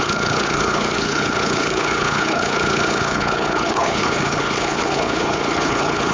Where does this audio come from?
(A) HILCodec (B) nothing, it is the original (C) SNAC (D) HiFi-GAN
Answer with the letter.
A